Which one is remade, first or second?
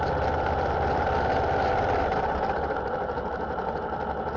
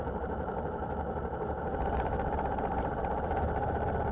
second